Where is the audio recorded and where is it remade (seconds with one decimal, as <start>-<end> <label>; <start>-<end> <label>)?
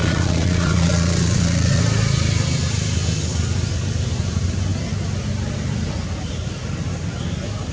0.0-1.8 remade; 1.8-7.7 recorded